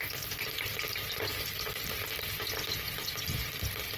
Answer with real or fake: real